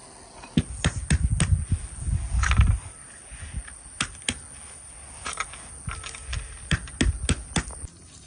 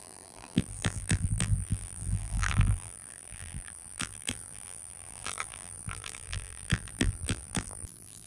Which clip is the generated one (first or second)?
second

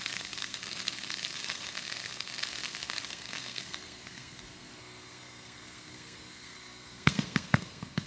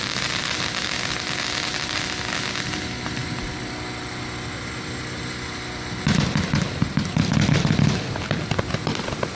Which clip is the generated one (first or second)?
first